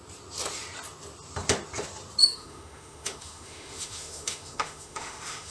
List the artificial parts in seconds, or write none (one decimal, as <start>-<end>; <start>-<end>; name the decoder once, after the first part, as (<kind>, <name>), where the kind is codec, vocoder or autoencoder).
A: 2.2-5.5 (autoencoder, DAC-VAE)